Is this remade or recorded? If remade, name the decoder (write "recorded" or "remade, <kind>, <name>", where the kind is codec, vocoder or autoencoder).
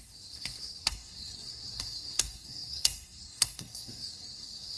remade, codec, SNAC